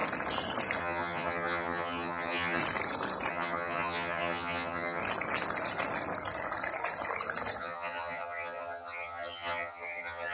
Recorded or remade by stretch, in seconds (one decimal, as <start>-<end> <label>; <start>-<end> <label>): 0.0-0.8 recorded; 0.8-2.6 remade; 2.6-3.3 recorded; 3.3-5.0 remade; 5.0-7.6 recorded; 7.6-10.3 remade